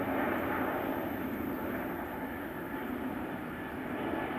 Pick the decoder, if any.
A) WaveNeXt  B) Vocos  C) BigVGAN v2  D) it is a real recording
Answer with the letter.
C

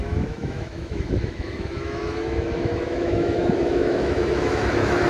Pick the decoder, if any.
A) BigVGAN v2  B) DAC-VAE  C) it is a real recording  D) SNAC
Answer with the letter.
B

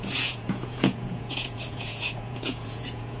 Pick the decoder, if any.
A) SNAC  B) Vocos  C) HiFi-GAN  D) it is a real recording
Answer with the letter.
B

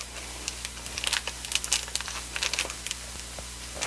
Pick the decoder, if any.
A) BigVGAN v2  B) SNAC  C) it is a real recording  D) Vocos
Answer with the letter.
C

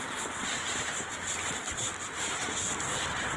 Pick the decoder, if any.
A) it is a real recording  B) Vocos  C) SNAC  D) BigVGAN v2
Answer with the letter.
D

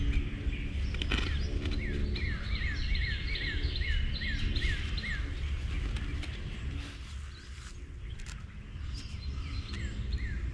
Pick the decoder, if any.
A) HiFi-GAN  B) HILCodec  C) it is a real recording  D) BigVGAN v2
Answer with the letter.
C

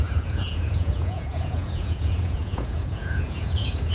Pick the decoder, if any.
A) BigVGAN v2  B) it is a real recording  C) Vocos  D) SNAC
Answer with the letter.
C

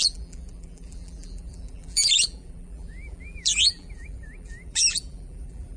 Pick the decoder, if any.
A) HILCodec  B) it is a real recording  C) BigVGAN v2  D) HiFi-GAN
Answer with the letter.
C